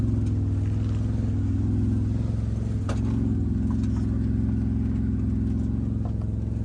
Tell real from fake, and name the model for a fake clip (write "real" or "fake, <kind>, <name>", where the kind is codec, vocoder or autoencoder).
real